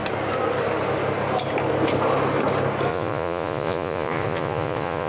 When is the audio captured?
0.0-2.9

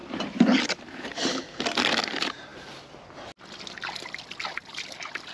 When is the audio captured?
0.0-1.6; 2.5-4.7

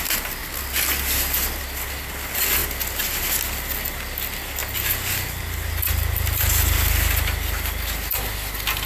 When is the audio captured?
0.0-8.9

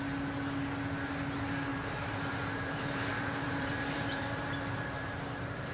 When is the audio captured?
0.0-1.7; 5.1-5.7

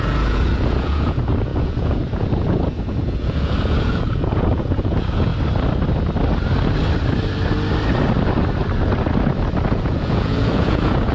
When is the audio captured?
5.3-9.7

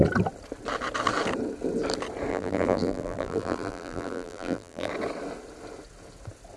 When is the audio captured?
0.0-2.3; 4.9-6.6